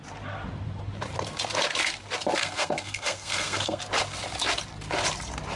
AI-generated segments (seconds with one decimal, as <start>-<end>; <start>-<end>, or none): 2.4-3.8